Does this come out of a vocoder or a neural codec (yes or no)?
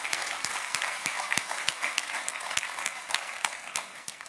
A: yes